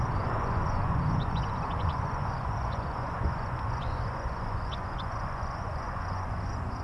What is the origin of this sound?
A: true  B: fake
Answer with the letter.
B